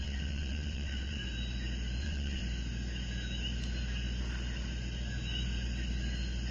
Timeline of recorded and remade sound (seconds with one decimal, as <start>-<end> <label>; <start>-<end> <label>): 0.0-1.2 remade; 1.2-2.0 recorded; 2.0-2.4 remade; 2.4-6.5 recorded